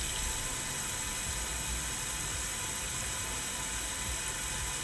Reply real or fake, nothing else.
real